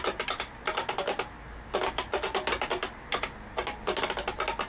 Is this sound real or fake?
real